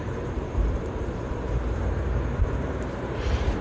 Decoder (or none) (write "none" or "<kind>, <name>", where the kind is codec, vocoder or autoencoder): vocoder, BigVGAN v2